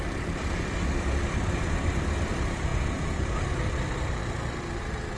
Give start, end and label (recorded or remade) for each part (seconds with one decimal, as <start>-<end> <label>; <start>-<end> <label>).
0.0-2.7 recorded; 2.7-3.4 remade; 3.4-5.2 recorded